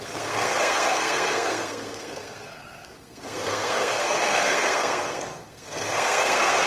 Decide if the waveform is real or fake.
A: fake